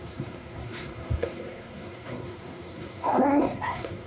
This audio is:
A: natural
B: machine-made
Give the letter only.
B